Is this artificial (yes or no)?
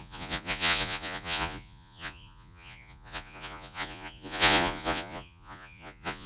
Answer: yes